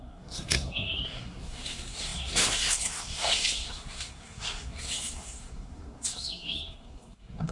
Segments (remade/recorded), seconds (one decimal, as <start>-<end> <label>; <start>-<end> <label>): 0.0-7.5 remade